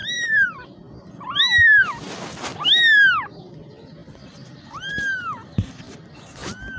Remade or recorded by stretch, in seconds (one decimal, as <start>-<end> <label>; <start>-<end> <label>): 0.0-0.9 remade; 0.9-4.0 recorded; 4.0-6.1 remade; 6.1-6.8 recorded